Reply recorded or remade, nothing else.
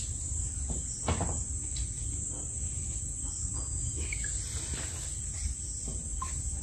recorded